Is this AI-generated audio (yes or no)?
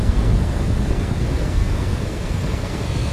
yes